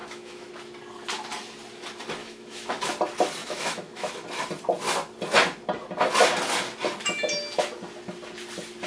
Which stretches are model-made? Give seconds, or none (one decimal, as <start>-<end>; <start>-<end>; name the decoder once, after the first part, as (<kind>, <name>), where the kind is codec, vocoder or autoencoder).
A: 0.0-0.5 (autoencoder, DAC-VAE); 2.2-2.9; 3.4-4.1